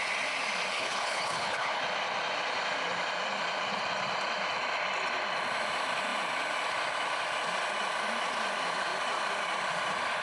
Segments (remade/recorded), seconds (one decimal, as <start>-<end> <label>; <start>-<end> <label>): 0.0-0.7 recorded; 0.7-1.8 remade; 1.8-10.2 recorded